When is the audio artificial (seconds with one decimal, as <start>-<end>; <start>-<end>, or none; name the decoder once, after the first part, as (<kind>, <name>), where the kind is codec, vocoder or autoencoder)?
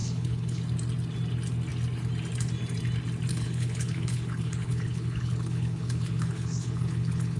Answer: 0.0-0.6 (codec, HILCodec); 3.3-7.4